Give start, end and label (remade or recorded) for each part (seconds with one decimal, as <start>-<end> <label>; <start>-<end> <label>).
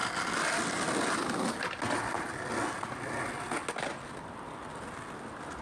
0.0-5.6 recorded